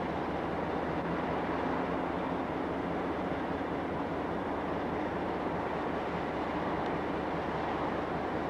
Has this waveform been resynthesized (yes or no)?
no